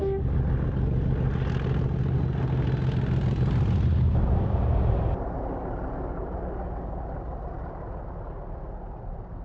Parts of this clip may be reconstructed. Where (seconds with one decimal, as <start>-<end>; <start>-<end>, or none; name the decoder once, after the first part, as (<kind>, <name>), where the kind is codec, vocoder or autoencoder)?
none